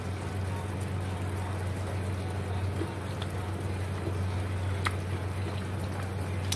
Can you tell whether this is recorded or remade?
recorded